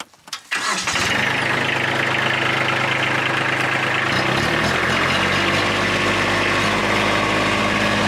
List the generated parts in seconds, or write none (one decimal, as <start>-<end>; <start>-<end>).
none